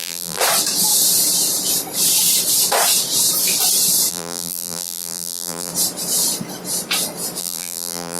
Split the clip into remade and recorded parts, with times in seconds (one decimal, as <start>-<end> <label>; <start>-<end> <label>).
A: 0.0-0.4 remade; 0.4-4.1 recorded; 4.1-5.7 remade; 5.7-7.4 recorded; 7.4-8.2 remade